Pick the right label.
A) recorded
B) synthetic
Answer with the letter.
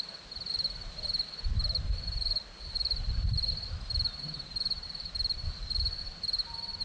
B